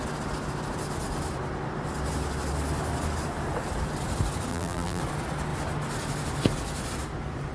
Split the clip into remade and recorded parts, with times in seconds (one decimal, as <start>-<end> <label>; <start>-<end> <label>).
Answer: 0.0-4.5 recorded; 4.5-5.0 remade; 5.0-7.5 recorded